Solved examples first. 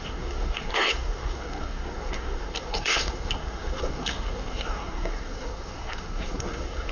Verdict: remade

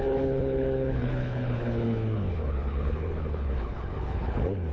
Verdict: remade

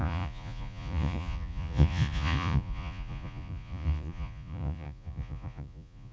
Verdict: remade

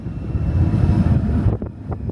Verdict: recorded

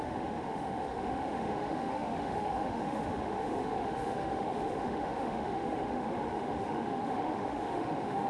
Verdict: remade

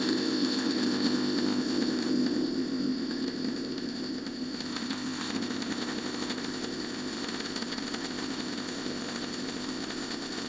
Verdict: remade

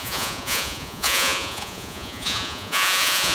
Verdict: remade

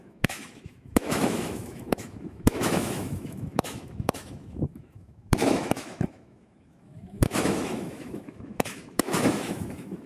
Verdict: remade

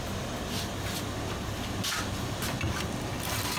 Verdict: recorded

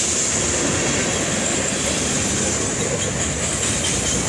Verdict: recorded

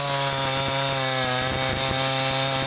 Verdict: recorded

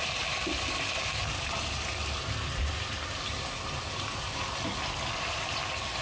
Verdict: recorded